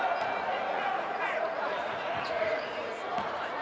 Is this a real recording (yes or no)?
no